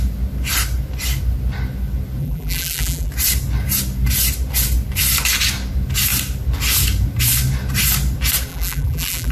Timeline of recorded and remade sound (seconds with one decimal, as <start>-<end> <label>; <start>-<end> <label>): 0.0-2.2 recorded; 2.2-3.1 remade; 3.1-8.5 recorded; 8.5-9.3 remade